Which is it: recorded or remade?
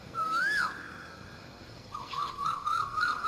remade